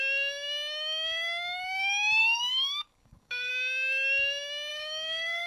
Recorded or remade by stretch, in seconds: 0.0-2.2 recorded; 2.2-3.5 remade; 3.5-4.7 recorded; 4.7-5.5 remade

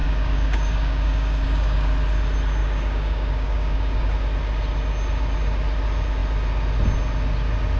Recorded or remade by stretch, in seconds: 0.0-1.9 remade; 1.9-2.6 recorded; 2.6-4.1 remade; 4.1-7.8 recorded

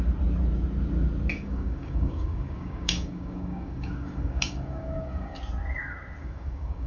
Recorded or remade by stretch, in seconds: 0.0-1.3 recorded; 1.3-5.4 remade; 5.4-6.2 recorded; 6.2-6.9 remade

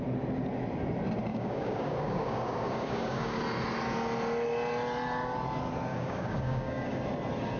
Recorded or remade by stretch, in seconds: 0.0-1.3 recorded; 1.3-3.4 remade; 3.4-5.9 recorded; 5.9-7.0 remade; 7.0-7.6 recorded